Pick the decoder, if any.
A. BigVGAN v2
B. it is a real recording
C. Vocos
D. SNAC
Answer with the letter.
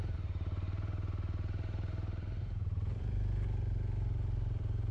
A